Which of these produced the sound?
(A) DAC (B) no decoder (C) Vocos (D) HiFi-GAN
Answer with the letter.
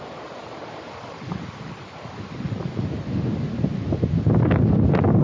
B